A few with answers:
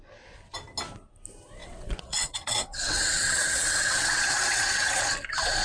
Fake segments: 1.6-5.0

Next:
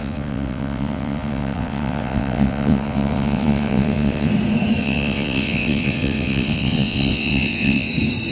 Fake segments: 0.0-4.3; 4.8-7.9

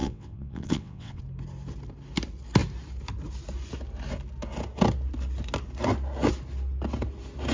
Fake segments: 0.0-1.2

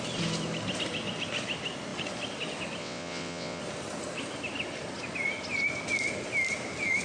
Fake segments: 2.8-3.6